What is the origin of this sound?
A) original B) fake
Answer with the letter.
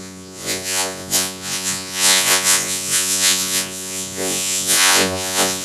B